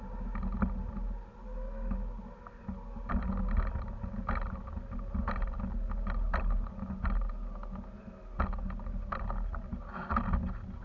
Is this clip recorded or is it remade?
recorded